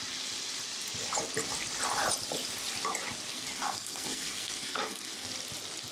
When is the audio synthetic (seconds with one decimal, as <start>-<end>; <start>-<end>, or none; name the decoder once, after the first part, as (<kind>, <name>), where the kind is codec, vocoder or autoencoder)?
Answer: 3.3-5.3 (codec, SNAC)